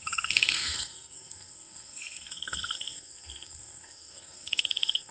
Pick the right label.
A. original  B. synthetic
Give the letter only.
B